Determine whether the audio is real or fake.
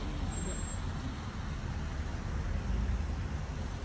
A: real